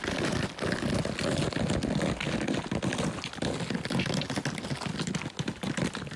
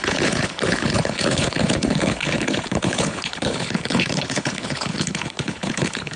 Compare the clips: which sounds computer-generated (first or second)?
second